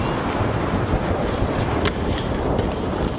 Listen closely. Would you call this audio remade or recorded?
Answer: recorded